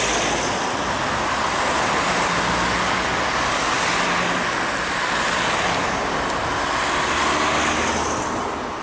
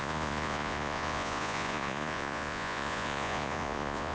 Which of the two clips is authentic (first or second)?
first